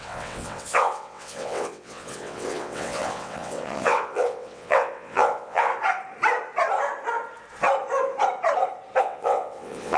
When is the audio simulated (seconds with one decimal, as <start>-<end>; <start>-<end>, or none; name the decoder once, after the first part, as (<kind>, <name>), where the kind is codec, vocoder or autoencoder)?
0.0-5.7 (vocoder, WaveNeXt); 9.0-10.0